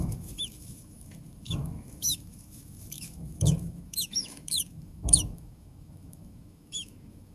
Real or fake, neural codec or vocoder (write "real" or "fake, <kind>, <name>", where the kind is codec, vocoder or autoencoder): fake, autoencoder, DAC-VAE